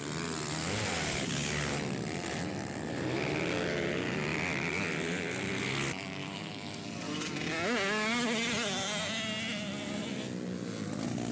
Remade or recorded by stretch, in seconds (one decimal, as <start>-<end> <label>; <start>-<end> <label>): 0.0-6.2 recorded; 6.2-6.8 remade; 6.8-11.3 recorded